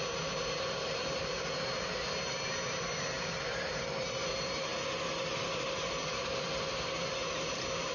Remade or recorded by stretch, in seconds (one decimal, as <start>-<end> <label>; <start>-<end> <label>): 0.0-7.9 recorded